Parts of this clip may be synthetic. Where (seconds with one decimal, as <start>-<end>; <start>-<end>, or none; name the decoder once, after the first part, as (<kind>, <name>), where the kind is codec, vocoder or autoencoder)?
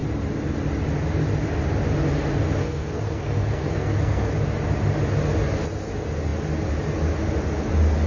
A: 2.6-4.3 (codec, SNAC)